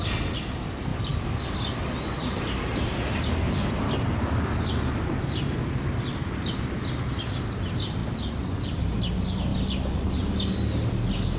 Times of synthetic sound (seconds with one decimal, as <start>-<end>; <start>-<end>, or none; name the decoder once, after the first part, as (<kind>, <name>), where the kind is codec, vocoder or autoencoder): none